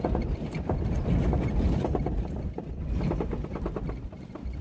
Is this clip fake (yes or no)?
yes